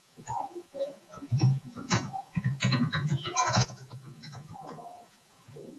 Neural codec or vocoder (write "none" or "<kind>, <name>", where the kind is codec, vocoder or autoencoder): vocoder, Vocos